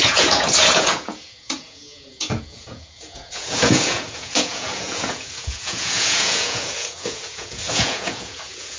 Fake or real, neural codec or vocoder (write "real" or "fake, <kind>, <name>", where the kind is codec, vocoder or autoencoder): fake, vocoder, Vocos